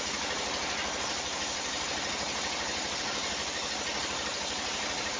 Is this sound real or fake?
real